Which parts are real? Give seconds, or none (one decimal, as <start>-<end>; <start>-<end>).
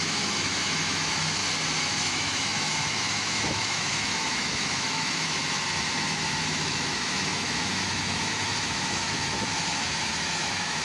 1.4-2.0; 5.4-6.4